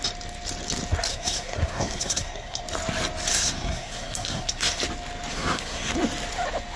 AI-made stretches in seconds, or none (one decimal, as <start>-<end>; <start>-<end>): 1.1-2.6; 3.3-4.8; 5.3-5.9